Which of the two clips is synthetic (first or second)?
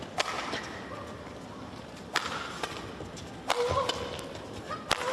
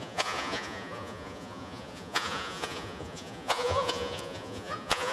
second